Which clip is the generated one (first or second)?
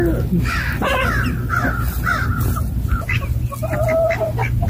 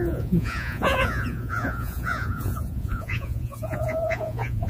second